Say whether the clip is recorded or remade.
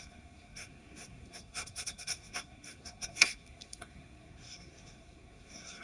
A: remade